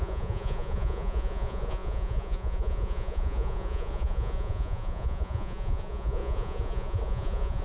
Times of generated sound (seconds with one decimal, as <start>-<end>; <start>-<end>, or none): 0.0-7.6

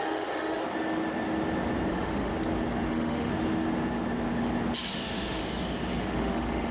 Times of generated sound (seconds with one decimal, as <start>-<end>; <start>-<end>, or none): 0.0-0.6; 1.9-2.3; 2.9-3.3; 4.9-5.4; 5.9-6.7

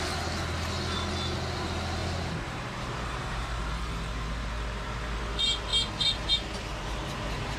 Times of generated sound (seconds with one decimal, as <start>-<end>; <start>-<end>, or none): 2.0-3.9

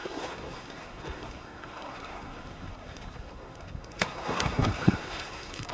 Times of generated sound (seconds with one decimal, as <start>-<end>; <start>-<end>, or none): 0.0-5.7

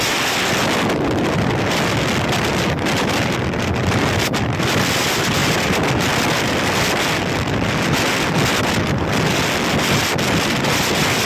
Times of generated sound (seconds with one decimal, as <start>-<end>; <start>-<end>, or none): 5.4-5.9

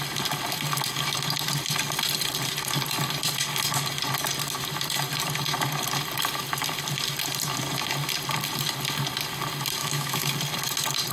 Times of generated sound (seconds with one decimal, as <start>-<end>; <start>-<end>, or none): 9.8-10.3